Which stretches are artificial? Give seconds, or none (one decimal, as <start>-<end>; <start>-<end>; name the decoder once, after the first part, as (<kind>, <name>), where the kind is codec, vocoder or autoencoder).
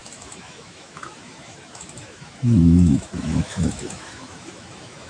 0.0-5.1 (autoencoder, DAC-VAE)